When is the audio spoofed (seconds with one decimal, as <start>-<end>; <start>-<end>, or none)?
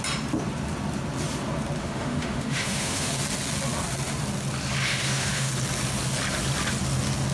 1.8-3.1; 4.8-5.5